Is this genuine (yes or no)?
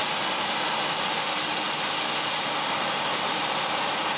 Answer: yes